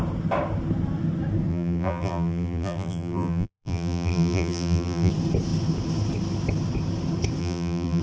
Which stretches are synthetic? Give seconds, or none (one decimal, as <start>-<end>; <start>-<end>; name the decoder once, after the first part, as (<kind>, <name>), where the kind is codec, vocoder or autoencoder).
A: 1.5-5.1 (vocoder, BigVGAN v2); 7.4-8.0